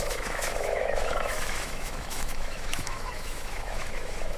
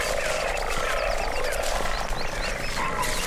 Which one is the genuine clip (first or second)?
second